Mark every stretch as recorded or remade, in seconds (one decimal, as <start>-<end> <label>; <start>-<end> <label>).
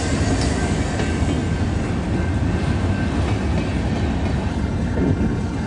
0.0-4.5 recorded; 4.5-5.7 remade